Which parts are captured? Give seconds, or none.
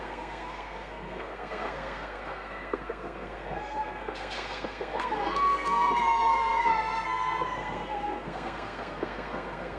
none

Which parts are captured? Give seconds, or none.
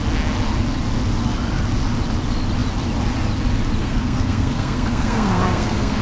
0.0-3.8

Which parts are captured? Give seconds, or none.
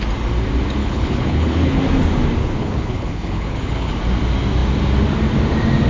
0.0-0.8; 1.8-2.4; 4.0-5.9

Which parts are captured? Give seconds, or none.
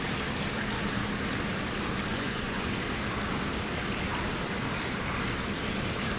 0.0-2.1; 2.7-6.2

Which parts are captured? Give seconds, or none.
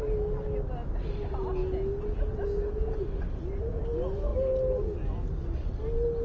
0.0-6.2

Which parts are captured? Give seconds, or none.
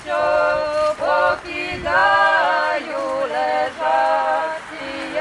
0.0-5.2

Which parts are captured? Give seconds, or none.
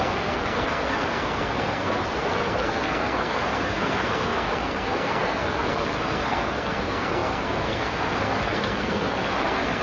none